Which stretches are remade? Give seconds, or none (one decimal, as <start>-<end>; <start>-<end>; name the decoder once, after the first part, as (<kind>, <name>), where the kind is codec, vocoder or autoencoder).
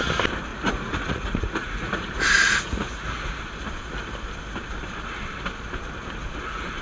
0.5-3.4 (vocoder, Vocos)